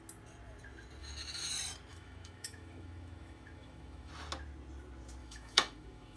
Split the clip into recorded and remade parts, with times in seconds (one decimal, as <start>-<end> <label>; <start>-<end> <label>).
0.0-1.0 recorded; 1.0-1.5 remade; 1.5-1.9 recorded; 1.9-4.1 remade; 4.1-5.2 recorded; 5.2-6.2 remade